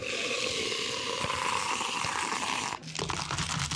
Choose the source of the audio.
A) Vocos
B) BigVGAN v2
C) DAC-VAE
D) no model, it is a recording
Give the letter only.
D